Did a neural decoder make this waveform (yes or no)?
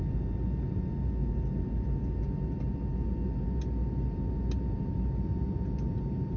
no